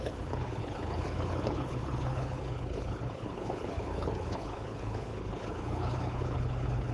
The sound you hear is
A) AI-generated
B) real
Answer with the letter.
A